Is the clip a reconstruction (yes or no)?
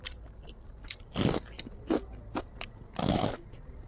no